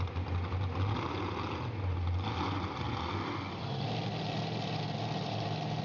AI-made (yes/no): no